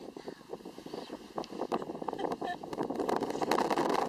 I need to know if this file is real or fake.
real